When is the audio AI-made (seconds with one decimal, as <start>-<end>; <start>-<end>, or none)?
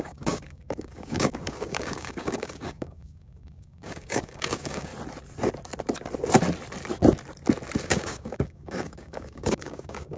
0.0-4.9; 7.8-10.2